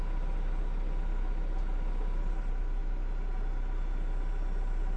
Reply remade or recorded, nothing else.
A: recorded